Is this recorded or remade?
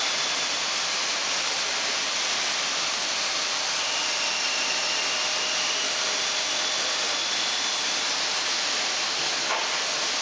recorded